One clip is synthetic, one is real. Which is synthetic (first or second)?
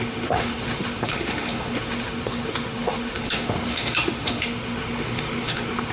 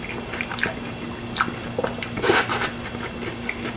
first